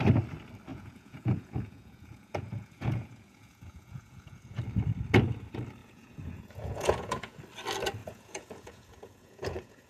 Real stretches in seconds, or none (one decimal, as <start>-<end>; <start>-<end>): 0.0-0.7; 4.6-5.8; 7.4-8.0